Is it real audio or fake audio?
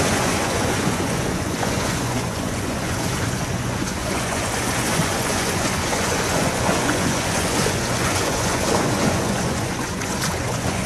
fake